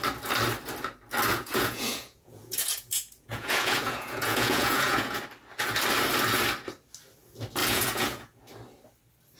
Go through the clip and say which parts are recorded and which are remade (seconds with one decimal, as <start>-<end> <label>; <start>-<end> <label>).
0.0-1.3 recorded; 1.3-5.2 remade; 5.2-7.6 recorded; 7.6-8.4 remade; 8.4-9.4 recorded